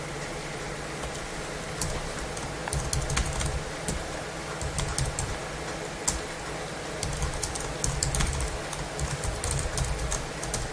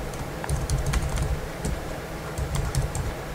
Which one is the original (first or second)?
first